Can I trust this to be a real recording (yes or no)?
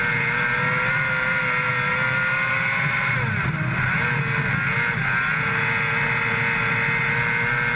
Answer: yes